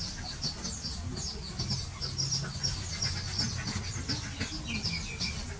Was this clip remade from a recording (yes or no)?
no